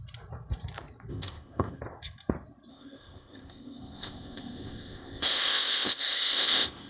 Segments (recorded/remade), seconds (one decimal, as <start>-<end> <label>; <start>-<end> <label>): 0.0-1.1 recorded; 1.1-1.8 remade; 1.8-2.7 recorded; 2.7-6.9 remade